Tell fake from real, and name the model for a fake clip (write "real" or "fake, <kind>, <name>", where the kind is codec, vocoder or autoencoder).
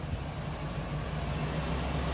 real